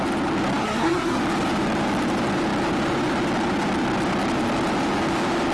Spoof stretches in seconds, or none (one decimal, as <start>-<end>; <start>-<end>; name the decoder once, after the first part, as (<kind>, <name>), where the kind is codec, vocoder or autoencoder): 0.6-1.2 (codec, SNAC)